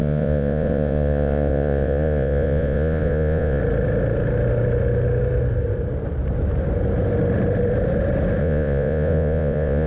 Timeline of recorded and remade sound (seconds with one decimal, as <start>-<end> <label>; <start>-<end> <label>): 0.0-3.6 remade; 3.6-8.4 recorded; 8.4-9.9 remade